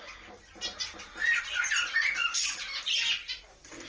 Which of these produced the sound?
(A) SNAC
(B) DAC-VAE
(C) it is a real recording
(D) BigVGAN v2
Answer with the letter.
C